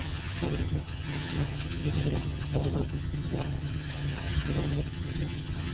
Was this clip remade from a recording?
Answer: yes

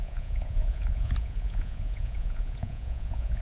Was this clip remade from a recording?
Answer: yes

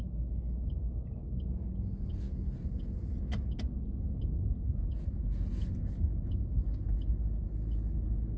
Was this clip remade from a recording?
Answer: no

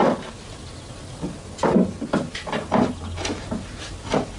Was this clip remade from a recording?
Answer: no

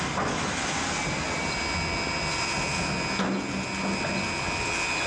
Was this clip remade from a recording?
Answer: no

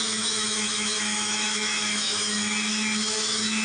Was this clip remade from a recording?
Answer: yes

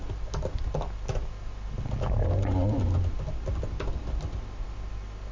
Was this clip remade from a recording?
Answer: no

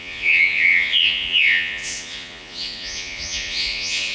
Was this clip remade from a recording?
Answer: yes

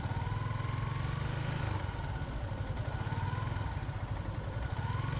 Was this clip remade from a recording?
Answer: no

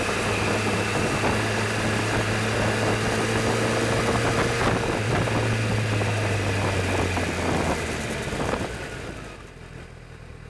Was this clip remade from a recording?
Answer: no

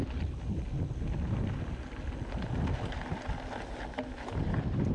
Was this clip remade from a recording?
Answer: no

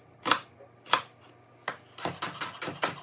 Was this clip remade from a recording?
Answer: no